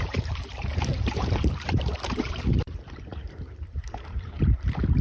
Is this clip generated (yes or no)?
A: yes